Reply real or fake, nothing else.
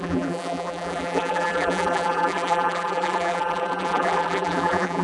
fake